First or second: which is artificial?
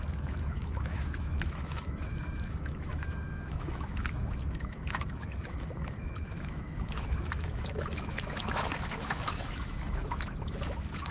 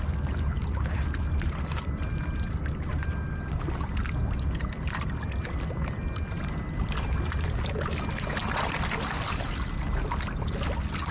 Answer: first